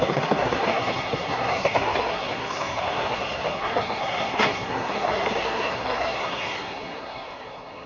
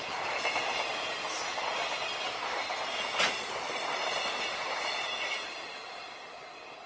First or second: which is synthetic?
first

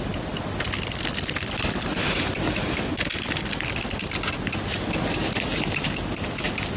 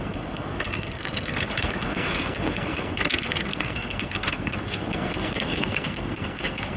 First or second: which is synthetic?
second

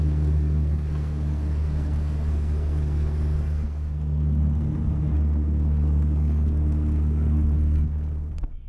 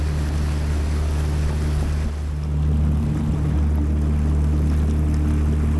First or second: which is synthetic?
first